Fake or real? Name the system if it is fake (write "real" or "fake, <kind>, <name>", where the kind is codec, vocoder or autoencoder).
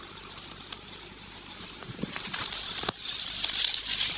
fake, vocoder, BigVGAN v2